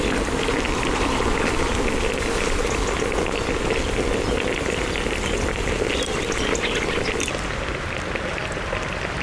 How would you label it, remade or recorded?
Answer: recorded